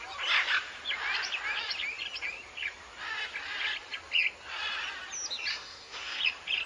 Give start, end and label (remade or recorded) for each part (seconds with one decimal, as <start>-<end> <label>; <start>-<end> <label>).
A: 0.0-5.5 recorded; 5.5-6.2 remade; 6.2-6.7 recorded